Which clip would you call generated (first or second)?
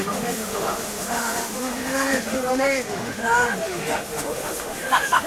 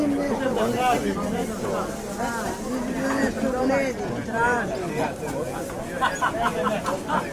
first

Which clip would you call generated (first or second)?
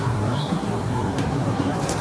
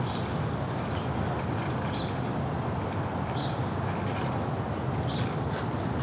first